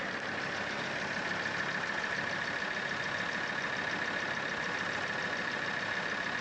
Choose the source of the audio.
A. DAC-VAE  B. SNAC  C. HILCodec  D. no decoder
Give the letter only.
D